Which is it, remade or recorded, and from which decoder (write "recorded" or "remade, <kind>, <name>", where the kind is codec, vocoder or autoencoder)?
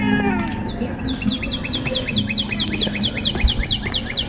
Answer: recorded